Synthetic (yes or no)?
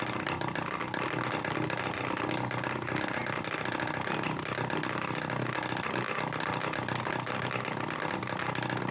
no